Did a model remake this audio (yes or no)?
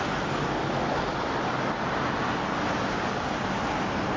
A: no